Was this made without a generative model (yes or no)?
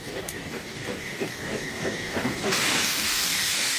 no